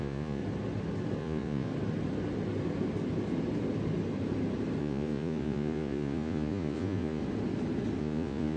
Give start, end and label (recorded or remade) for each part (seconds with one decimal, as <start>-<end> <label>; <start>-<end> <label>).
0.0-0.4 remade; 0.4-1.2 recorded; 1.2-1.7 remade; 1.7-4.8 recorded; 4.8-7.2 remade; 7.2-8.0 recorded; 8.0-8.6 remade